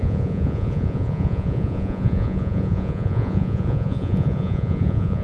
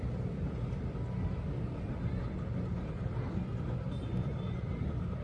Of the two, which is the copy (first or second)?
first